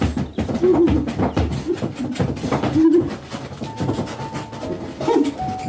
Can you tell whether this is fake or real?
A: real